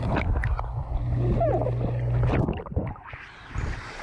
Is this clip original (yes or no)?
yes